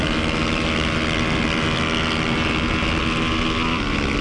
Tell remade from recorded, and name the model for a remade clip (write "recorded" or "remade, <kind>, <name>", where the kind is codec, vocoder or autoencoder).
recorded